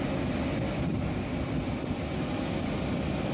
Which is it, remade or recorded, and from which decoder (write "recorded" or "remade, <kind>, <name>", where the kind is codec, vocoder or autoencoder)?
recorded